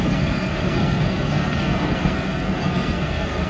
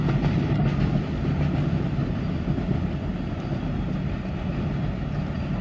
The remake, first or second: first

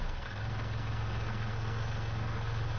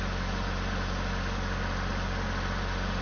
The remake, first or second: first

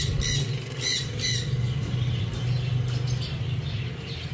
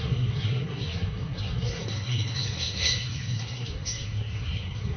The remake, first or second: second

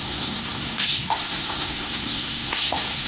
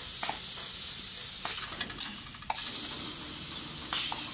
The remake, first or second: first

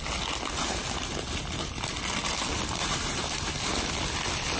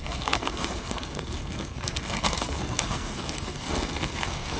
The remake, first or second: second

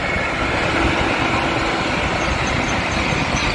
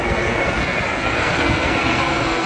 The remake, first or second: second